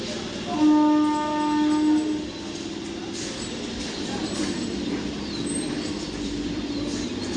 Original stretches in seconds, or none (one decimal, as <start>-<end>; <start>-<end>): 0.0-3.0